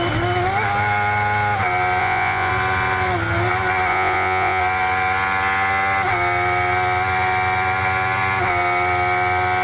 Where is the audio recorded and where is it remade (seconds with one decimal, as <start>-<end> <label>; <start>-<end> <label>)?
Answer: 0.0-2.0 recorded; 2.0-2.5 remade; 2.5-3.9 recorded; 3.9-4.6 remade; 4.6-9.6 recorded